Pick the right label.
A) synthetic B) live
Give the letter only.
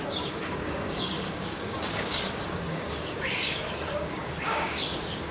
A